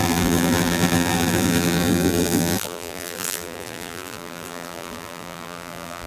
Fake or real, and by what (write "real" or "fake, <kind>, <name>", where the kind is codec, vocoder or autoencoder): fake, vocoder, BigVGAN v2